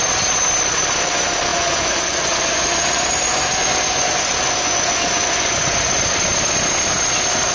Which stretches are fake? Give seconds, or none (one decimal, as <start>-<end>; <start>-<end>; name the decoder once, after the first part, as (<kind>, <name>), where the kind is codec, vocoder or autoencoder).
1.5-6.0 (vocoder, Vocos)

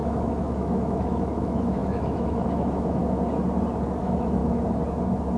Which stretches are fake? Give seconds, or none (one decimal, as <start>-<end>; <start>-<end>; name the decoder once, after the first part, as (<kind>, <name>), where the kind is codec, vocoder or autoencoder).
0.0-3.0 (autoencoder, DAC-VAE); 4.0-4.4